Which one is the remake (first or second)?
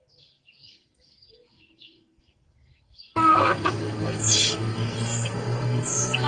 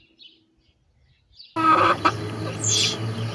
first